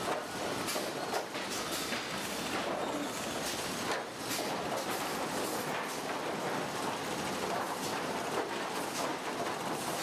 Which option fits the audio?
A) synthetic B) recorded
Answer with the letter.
B